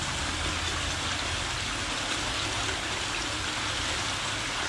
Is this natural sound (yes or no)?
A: yes